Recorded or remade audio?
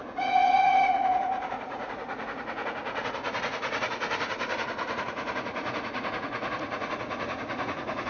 remade